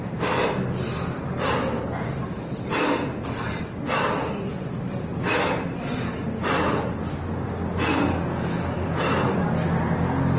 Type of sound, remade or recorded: recorded